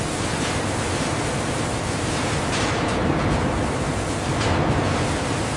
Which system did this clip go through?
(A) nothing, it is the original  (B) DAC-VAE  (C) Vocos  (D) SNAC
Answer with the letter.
A